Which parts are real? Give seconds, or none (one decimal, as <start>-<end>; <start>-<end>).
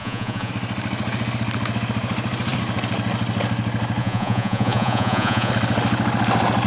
0.5-4.0; 5.5-6.7